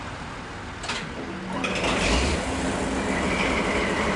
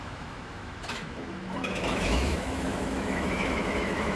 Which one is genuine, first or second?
first